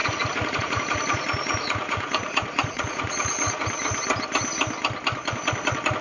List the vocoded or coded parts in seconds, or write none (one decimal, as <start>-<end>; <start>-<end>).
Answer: 0.0-3.6